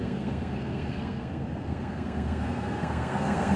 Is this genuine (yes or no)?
no